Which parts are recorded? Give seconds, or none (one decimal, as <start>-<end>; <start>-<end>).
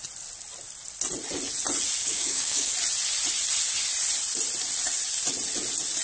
0.0-2.0; 2.7-6.0